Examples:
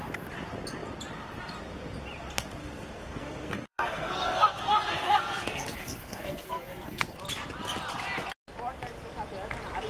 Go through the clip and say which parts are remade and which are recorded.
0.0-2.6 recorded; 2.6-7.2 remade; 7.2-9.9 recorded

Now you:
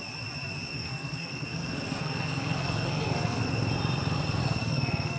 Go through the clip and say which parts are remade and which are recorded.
0.0-0.7 recorded; 0.7-3.4 remade; 3.4-4.6 recorded; 4.6-5.2 remade

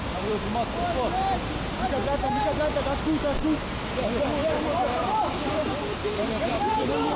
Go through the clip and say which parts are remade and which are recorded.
0.0-4.4 recorded; 4.4-7.2 remade

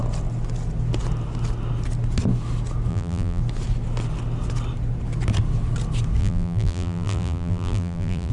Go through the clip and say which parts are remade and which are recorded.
0.0-2.9 recorded; 2.9-3.4 remade; 3.4-6.2 recorded; 6.2-8.3 remade

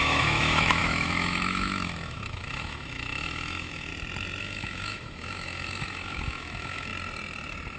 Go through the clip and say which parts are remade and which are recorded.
0.0-3.9 remade; 3.9-4.4 recorded; 4.4-6.9 remade; 6.9-7.8 recorded

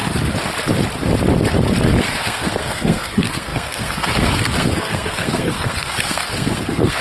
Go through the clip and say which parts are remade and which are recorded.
0.0-2.0 recorded; 2.0-7.0 remade

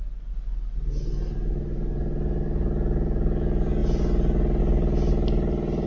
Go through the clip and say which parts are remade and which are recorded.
0.0-5.9 recorded